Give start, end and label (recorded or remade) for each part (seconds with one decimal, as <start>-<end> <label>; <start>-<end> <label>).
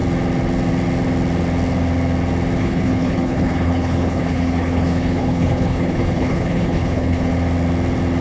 0.0-2.6 recorded; 2.6-7.3 remade; 7.3-8.2 recorded